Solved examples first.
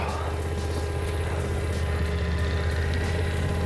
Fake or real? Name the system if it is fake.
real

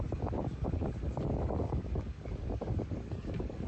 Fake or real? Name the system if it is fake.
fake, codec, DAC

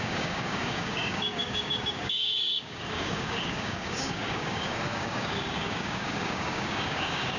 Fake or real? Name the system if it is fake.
fake, codec, DAC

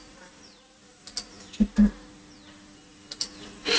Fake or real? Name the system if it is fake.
real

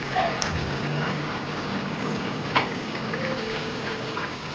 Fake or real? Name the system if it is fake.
fake, codec, DAC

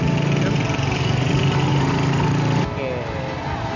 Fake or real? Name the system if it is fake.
real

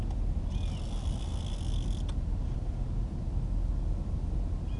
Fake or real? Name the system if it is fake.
real